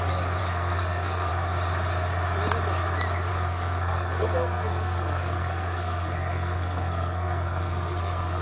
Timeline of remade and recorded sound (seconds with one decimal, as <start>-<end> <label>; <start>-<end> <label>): 0.0-0.4 recorded; 0.4-1.3 remade; 1.3-3.3 recorded; 3.3-8.4 remade